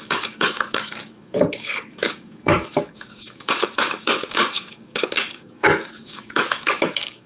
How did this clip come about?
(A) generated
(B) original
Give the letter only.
A